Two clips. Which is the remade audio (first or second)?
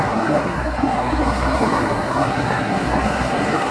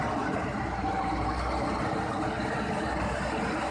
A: first